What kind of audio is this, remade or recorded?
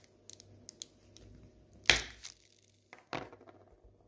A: recorded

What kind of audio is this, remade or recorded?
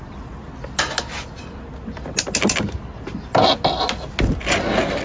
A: recorded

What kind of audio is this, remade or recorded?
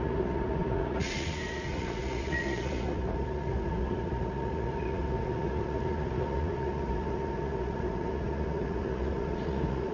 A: remade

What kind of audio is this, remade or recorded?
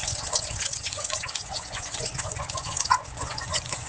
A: remade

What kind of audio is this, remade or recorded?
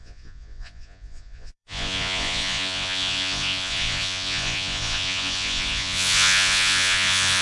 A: remade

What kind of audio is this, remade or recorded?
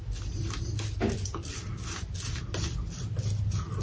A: recorded